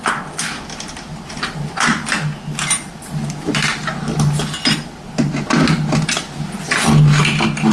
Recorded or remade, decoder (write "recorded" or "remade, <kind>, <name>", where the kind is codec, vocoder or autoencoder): recorded